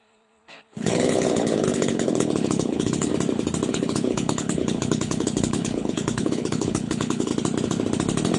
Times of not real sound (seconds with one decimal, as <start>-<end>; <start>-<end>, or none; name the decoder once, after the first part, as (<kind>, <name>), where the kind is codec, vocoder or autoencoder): 0.0-3.1 (codec, HILCodec); 3.7-7.3